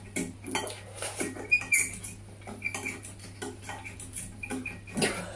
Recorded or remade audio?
recorded